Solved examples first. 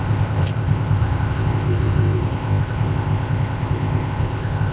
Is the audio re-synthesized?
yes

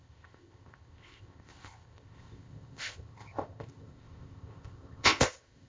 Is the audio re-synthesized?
yes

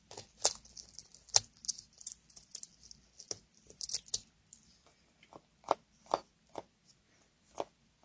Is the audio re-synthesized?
no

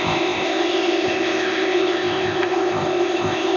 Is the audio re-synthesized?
yes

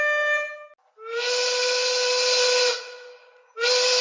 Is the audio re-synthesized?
no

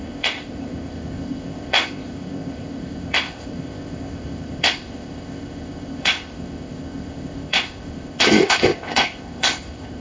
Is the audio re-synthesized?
yes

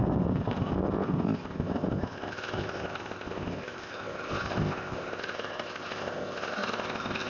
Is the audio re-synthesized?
yes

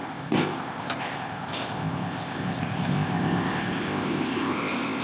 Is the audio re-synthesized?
yes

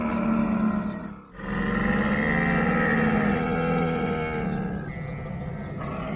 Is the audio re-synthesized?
no